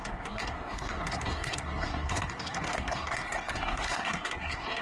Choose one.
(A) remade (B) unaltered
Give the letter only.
A